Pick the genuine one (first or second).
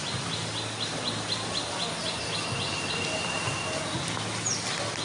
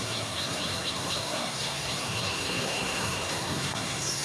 first